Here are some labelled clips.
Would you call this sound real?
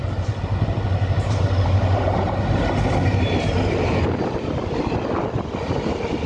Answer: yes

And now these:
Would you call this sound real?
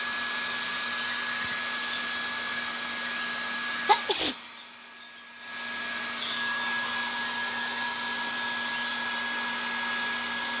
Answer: yes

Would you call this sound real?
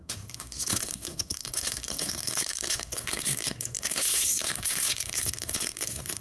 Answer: no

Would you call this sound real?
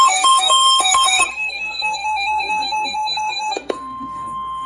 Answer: no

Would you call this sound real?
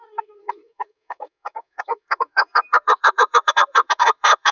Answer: no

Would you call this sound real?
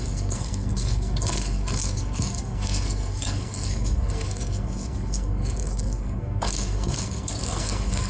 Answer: no